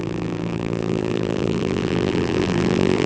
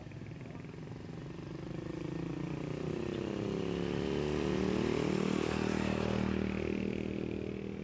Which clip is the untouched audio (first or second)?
second